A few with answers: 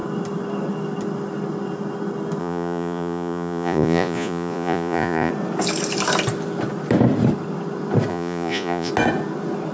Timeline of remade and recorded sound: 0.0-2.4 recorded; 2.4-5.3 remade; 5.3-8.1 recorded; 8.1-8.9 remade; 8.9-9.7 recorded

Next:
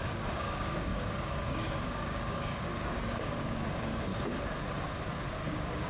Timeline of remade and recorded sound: 0.0-4.1 remade; 4.1-5.2 recorded; 5.2-5.9 remade

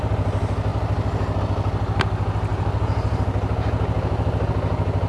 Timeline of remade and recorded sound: 0.0-2.5 recorded; 2.5-4.5 remade; 4.5-5.1 recorded